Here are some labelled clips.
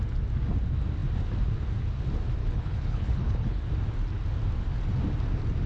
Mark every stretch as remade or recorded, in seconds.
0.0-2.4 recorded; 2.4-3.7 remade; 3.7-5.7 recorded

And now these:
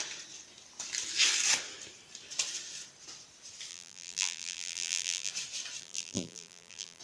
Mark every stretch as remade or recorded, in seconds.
0.0-3.7 recorded; 3.7-5.3 remade; 5.3-5.8 recorded; 5.8-7.0 remade

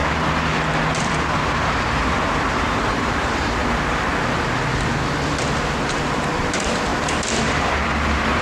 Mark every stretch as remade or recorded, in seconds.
0.0-3.0 recorded; 3.0-3.6 remade; 3.6-5.8 recorded; 5.8-6.9 remade; 6.9-7.6 recorded; 7.6-8.4 remade

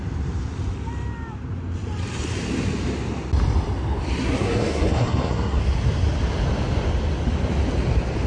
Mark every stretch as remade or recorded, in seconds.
0.0-4.2 recorded; 4.2-5.6 remade; 5.6-8.3 recorded

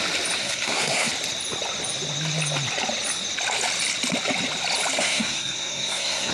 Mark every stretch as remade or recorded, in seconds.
0.0-0.4 recorded; 0.4-1.1 remade; 1.1-5.0 recorded; 5.0-6.3 remade

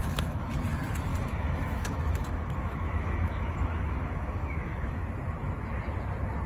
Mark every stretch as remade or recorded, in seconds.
0.0-0.5 remade; 0.5-1.1 recorded; 1.1-5.0 remade; 5.0-6.5 recorded

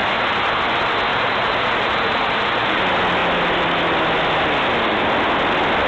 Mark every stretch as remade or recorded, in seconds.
0.0-0.5 remade; 0.5-1.1 recorded; 1.1-2.8 remade; 2.8-5.9 recorded